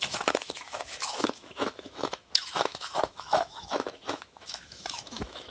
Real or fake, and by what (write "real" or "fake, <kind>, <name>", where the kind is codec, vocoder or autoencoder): fake, autoencoder, DAC-VAE